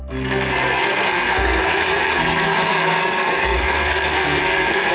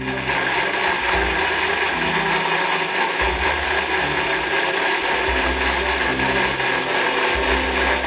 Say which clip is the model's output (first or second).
first